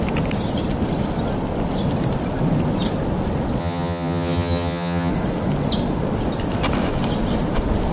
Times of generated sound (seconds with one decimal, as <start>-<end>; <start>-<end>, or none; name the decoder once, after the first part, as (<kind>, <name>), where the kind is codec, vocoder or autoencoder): 3.6-5.1 (vocoder, HiFi-GAN)